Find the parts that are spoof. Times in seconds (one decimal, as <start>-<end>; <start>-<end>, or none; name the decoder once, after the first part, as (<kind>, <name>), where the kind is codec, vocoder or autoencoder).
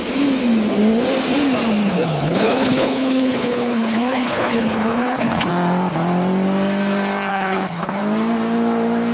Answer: 1.8-5.5 (codec, HILCodec); 7.3-8.0